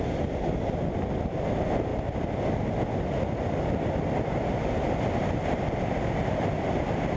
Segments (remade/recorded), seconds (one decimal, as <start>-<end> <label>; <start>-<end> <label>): 0.0-7.2 recorded

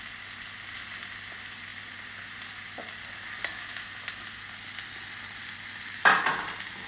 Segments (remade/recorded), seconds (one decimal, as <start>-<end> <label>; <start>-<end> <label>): 0.0-6.9 recorded

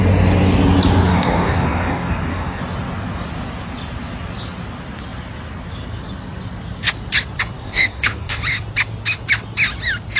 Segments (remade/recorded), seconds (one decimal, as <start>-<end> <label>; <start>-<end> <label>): 0.0-1.1 recorded; 1.1-2.6 remade; 2.6-7.6 recorded; 7.6-8.4 remade; 8.4-10.2 recorded

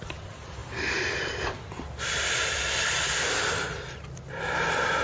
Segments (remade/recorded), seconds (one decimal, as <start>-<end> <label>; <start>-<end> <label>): 0.0-5.0 recorded

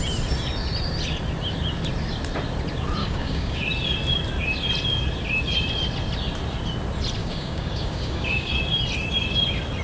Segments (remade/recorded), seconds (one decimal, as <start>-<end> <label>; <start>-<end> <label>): 0.0-3.0 recorded; 3.0-3.6 remade; 3.6-7.2 recorded; 7.2-8.5 remade; 8.5-9.8 recorded

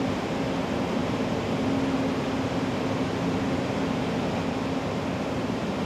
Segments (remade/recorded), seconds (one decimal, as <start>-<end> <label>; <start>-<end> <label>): 0.0-5.9 recorded

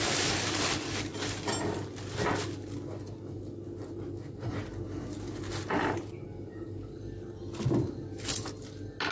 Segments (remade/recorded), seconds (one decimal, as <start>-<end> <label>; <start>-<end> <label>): 0.0-9.1 recorded

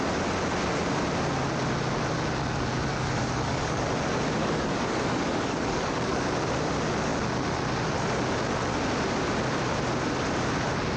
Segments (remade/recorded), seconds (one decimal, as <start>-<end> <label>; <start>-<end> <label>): 0.0-2.9 recorded; 2.9-3.8 remade; 3.8-4.4 recorded; 4.4-6.3 remade; 6.3-11.0 recorded